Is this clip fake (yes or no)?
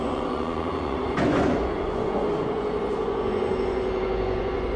yes